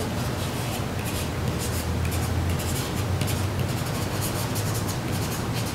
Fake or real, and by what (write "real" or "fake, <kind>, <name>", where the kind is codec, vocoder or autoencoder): real